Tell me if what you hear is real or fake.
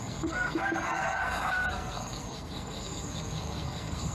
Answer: fake